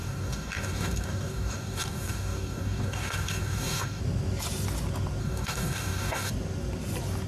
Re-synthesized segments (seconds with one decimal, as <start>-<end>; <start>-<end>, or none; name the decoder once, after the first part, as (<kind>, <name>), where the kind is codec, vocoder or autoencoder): 0.0-4.0 (codec, DAC); 5.2-6.3